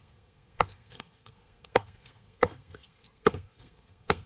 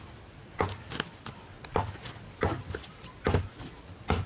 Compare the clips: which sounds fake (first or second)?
first